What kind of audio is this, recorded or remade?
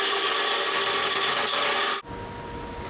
recorded